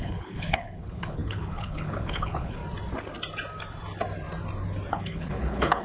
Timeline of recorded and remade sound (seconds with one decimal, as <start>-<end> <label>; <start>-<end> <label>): 0.0-2.6 remade; 2.6-4.9 recorded; 4.9-5.8 remade